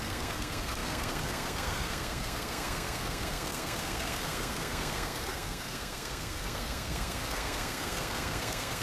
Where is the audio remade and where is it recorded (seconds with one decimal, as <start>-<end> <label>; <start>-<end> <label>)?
0.0-8.8 remade